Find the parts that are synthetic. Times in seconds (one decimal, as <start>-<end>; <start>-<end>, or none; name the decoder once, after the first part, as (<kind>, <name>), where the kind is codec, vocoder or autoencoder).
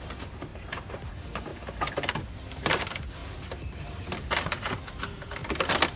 0.0-1.5 (vocoder, BigVGAN v2); 2.2-3.2; 3.8-5.4